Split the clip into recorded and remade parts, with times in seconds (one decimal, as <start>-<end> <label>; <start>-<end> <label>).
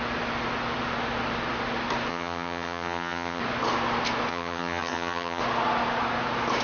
0.0-2.1 recorded; 2.1-3.4 remade; 3.4-4.3 recorded; 4.3-5.4 remade; 5.4-6.6 recorded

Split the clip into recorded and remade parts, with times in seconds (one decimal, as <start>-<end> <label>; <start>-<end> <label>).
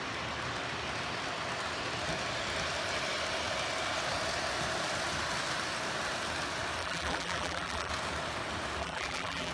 0.0-6.8 recorded; 6.8-7.9 remade; 7.9-8.8 recorded; 8.8-9.5 remade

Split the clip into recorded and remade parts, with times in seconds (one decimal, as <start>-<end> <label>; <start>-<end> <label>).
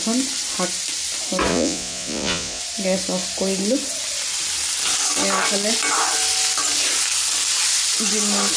0.0-1.5 recorded; 1.5-2.6 remade; 2.6-8.6 recorded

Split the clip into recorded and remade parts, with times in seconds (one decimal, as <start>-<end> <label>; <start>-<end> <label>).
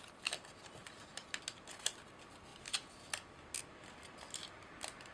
0.0-5.1 recorded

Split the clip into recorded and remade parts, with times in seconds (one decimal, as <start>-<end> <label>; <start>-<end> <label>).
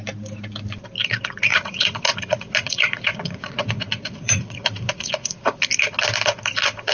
0.0-1.5 recorded; 1.5-5.6 remade; 5.6-6.9 recorded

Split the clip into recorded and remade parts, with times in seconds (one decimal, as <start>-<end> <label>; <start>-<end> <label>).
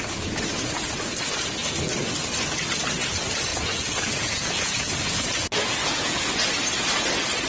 0.0-3.5 recorded; 3.5-6.3 remade; 6.3-7.5 recorded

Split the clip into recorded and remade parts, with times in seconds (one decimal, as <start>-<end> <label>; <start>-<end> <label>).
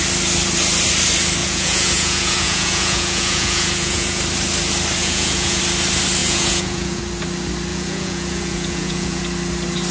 0.0-1.4 recorded; 1.4-4.2 remade; 4.2-5.0 recorded; 5.0-5.6 remade; 5.6-6.2 recorded; 6.2-7.0 remade; 7.0-7.7 recorded; 7.7-9.2 remade; 9.2-9.9 recorded